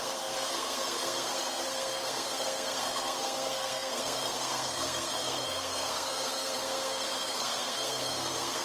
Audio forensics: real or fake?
fake